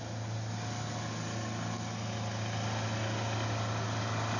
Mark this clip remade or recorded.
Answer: recorded